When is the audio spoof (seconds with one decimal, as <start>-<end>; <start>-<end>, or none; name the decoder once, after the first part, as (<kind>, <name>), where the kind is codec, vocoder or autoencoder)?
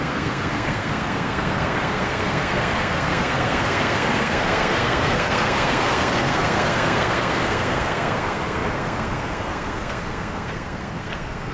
0.0-11.5 (codec, SNAC)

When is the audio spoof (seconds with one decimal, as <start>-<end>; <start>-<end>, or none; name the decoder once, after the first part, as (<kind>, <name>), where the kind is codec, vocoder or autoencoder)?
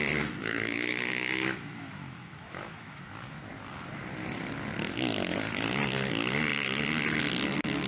0.4-3.5 (autoencoder, DAC-VAE)